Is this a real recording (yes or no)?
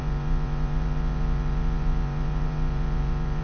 no